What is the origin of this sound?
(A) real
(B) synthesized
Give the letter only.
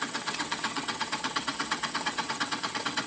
B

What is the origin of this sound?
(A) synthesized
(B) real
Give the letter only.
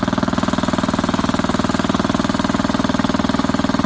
B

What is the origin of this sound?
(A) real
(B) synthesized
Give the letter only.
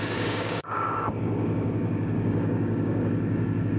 B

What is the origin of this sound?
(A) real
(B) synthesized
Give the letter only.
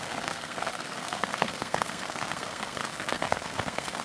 B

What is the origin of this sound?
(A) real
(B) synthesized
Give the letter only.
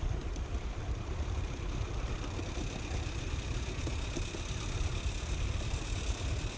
A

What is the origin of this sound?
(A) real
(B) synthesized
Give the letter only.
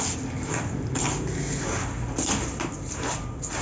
A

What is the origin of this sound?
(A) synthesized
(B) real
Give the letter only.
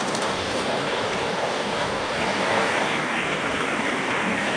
A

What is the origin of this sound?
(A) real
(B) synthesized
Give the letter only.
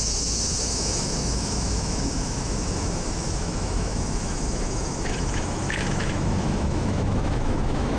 B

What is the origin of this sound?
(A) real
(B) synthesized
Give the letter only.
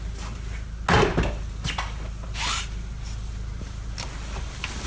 A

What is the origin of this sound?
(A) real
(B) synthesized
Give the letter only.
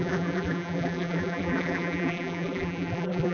B